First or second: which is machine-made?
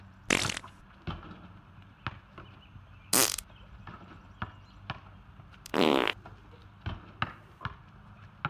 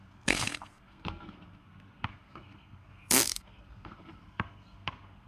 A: second